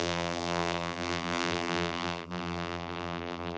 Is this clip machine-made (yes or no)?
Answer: yes